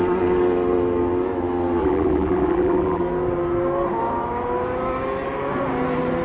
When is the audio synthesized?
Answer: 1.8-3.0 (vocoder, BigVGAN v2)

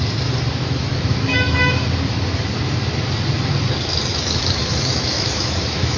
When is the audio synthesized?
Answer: 0.6-1.7 (autoencoder, DAC-VAE); 4.1-6.0